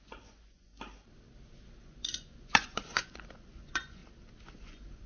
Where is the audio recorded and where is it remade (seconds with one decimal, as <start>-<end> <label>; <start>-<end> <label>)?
0.0-0.7 remade; 0.7-1.8 recorded; 1.8-4.0 remade; 4.0-4.6 recorded; 4.6-5.1 remade